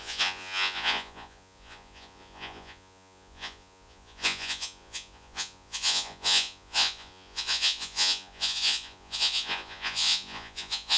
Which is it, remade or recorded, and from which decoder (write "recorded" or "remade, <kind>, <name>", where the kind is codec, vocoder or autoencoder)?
remade, vocoder, Vocos